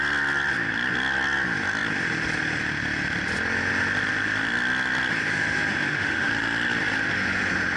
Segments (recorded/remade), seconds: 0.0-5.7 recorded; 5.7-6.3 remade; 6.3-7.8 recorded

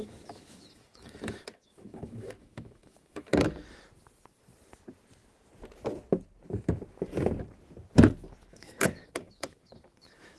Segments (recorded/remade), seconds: 0.0-3.3 remade; 3.3-8.5 recorded; 8.5-10.4 remade